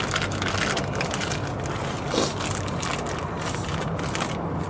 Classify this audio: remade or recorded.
recorded